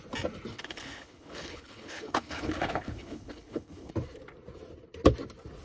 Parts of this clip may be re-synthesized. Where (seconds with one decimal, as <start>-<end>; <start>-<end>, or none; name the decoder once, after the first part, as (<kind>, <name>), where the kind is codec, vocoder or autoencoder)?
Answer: 0.5-3.9 (codec, HILCodec)